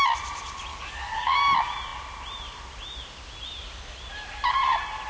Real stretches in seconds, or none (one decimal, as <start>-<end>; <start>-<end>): 0.0-0.7; 1.4-5.1